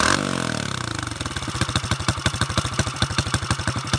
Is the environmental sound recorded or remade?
recorded